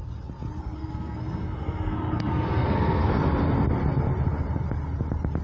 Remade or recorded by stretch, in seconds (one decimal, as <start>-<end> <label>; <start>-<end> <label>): 0.0-0.6 recorded; 0.6-3.1 remade; 3.1-5.4 recorded